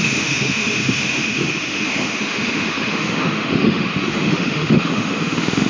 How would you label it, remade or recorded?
remade